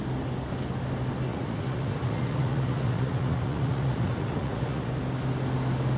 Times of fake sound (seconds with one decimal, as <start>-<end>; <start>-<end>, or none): 1.3-4.9

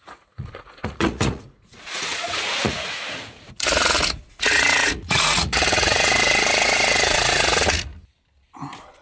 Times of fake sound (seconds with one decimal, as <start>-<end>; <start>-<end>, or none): 0.0-7.9

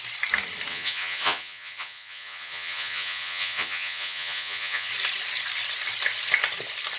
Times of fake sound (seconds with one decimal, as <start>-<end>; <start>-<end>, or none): 0.7-4.9

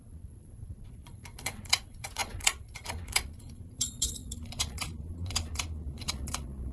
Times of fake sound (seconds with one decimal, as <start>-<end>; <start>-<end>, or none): 0.0-6.7

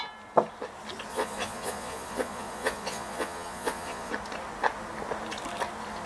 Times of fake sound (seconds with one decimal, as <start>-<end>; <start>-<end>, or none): 1.1-4.1

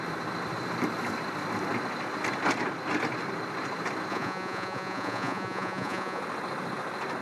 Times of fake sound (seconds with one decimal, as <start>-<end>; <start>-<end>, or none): 4.1-6.2

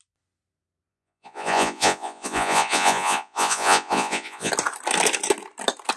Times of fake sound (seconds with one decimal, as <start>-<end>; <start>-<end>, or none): 0.9-4.5

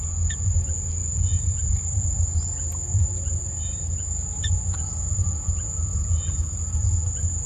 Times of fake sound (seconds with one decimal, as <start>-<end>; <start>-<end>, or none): 0.0-7.5